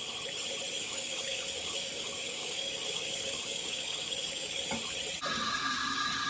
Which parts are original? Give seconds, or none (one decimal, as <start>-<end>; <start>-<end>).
0.0-0.8; 4.6-6.3